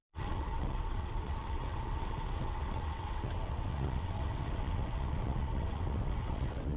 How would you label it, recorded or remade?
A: remade